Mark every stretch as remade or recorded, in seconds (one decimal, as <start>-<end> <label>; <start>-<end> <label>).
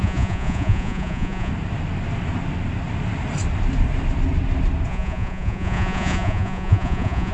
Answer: 0.0-1.5 remade; 1.5-4.9 recorded; 4.9-7.3 remade